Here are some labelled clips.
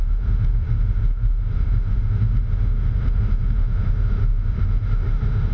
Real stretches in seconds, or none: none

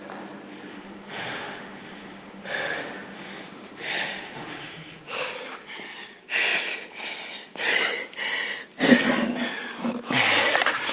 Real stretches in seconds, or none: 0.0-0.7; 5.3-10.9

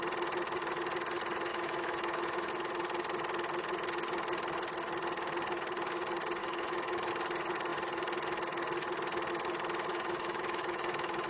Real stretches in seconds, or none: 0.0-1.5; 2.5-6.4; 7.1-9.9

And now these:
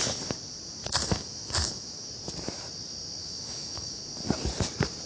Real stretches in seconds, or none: 0.0-0.8; 2.1-3.2; 4.0-5.1